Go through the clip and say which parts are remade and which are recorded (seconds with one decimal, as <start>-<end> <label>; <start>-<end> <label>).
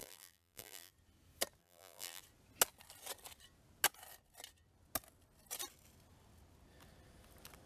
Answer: 0.0-0.9 remade; 0.9-1.6 recorded; 1.6-2.2 remade; 2.2-7.7 recorded